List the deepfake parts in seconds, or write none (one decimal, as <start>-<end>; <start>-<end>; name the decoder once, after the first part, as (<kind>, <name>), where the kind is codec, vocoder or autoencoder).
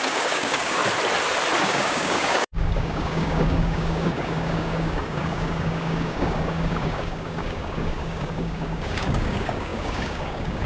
0.0-0.8 (codec, DAC); 1.6-10.7